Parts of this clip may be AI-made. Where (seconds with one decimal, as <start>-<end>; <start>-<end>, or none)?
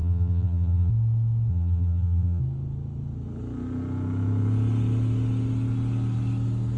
0.0-0.9; 1.5-2.4